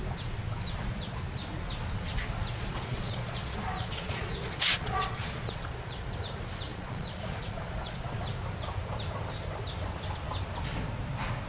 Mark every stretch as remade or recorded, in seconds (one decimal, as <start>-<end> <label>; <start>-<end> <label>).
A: 0.0-2.5 recorded; 2.5-6.0 remade; 6.0-6.7 recorded; 6.7-8.2 remade; 8.2-11.5 recorded

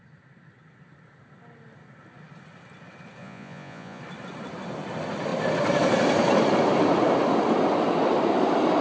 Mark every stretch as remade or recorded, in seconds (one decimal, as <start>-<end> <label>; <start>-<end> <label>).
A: 0.0-3.2 recorded; 3.2-4.0 remade; 4.0-8.8 recorded

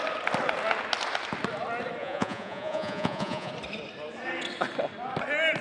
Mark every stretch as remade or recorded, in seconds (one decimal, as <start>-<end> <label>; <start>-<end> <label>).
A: 0.0-2.0 recorded; 2.0-3.5 remade; 3.5-5.6 recorded

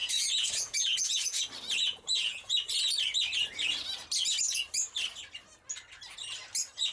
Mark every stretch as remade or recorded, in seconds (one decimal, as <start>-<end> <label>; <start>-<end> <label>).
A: 0.0-1.4 remade; 1.4-1.9 recorded; 1.9-2.5 remade; 2.5-6.9 recorded

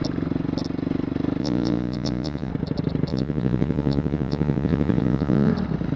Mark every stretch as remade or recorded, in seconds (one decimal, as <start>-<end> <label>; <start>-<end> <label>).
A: 0.0-1.4 recorded; 1.4-2.5 remade; 2.5-3.1 recorded; 3.1-5.5 remade; 5.5-6.0 recorded